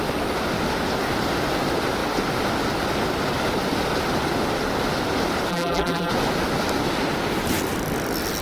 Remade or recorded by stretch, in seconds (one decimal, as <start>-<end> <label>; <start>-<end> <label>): 0.0-5.5 recorded; 5.5-6.1 remade; 6.1-8.4 recorded